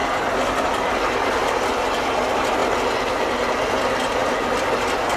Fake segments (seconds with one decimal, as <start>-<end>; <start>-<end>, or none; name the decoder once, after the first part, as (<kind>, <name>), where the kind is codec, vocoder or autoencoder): 0.6-2.6 (vocoder, BigVGAN v2); 3.8-4.2